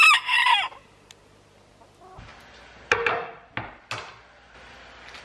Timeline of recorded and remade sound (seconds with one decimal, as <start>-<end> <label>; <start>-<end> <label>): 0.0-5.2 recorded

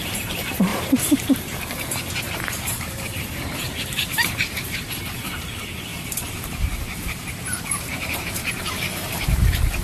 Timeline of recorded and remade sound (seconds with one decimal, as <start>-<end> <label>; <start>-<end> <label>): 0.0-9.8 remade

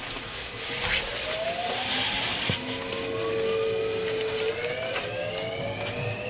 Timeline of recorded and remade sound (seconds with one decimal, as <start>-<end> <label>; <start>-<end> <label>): 0.0-6.3 recorded

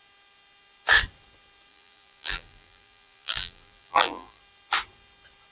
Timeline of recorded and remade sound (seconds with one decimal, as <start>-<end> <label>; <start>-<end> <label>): 0.0-1.7 recorded; 1.7-4.4 remade; 4.4-5.5 recorded

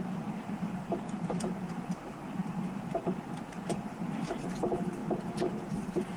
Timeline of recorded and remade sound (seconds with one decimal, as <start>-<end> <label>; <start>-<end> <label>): 0.0-6.2 remade

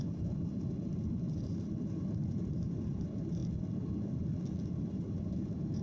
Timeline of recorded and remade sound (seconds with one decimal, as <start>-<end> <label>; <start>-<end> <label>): 0.0-3.4 remade; 3.4-4.6 recorded; 4.6-5.8 remade